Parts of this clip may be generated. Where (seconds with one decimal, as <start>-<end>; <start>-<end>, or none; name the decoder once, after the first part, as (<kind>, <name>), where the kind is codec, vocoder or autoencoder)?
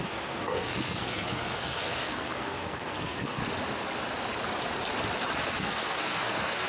0.0-3.4 (codec, SNAC); 5.6-6.7